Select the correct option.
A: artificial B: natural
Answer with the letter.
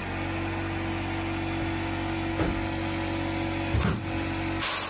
B